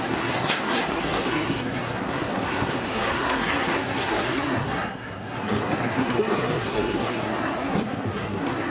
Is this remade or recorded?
remade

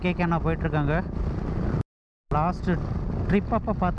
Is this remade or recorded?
recorded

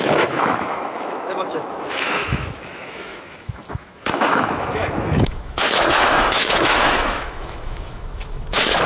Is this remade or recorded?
remade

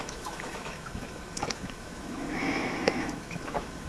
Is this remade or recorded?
remade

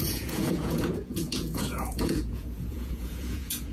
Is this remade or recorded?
remade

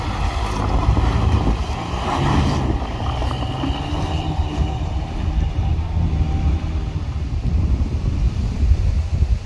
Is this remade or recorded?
recorded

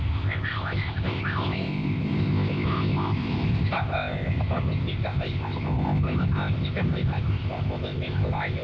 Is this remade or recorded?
remade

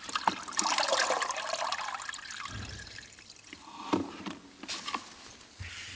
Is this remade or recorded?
recorded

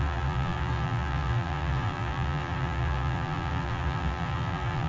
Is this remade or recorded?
remade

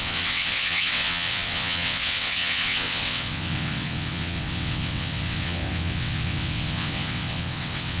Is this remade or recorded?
remade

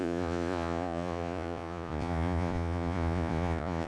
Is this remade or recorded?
remade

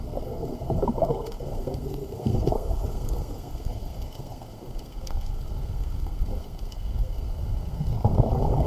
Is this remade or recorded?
remade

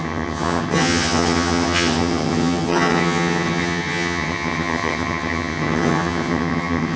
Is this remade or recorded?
remade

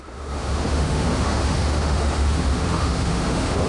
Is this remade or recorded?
remade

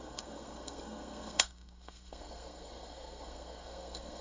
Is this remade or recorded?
remade